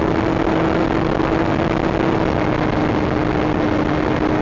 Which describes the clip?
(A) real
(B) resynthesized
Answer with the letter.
A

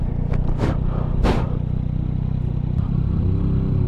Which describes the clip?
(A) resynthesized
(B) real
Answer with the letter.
B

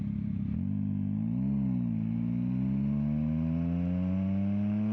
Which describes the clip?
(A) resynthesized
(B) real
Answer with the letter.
B